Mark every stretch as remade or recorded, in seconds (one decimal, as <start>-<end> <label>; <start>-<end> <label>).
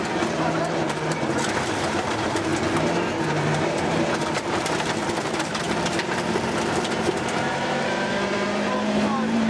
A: 0.0-2.5 remade; 2.5-3.2 recorded; 3.2-9.5 remade